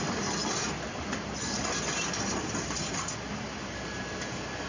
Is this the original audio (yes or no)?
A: yes